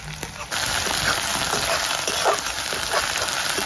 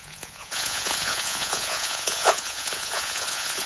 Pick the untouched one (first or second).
first